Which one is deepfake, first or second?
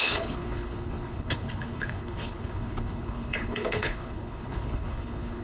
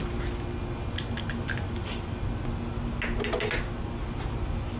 first